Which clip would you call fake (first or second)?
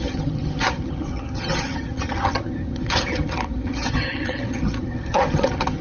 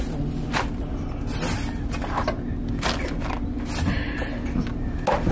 first